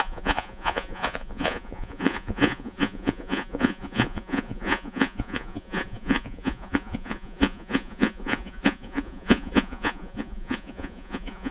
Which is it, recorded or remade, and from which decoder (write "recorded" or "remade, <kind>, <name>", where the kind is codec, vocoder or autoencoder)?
remade, vocoder, Vocos